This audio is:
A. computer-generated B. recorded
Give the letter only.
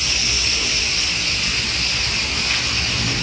B